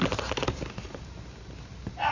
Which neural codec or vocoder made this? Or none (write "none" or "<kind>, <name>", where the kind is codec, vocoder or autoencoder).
none